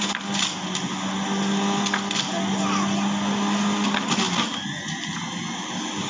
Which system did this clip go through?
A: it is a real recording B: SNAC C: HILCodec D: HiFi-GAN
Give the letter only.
A